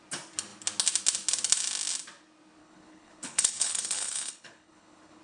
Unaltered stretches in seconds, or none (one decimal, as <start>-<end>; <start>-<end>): 0.0-2.6